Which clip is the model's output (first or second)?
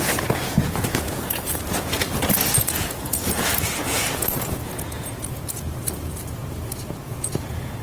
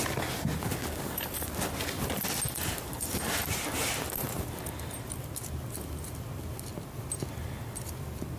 first